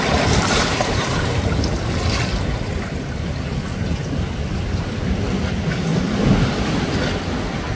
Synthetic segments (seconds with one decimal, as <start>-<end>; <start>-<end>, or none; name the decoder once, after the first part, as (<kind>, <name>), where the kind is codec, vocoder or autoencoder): 5.9-6.6 (vocoder, BigVGAN v2)